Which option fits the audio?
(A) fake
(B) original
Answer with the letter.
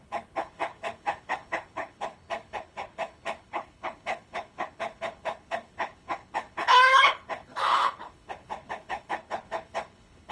A